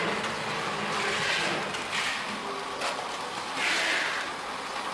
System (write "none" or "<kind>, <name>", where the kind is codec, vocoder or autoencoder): none